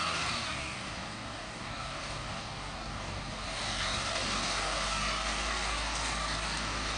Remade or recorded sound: remade